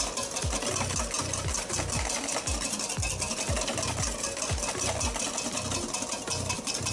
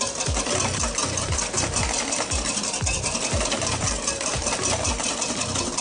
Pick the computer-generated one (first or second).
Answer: second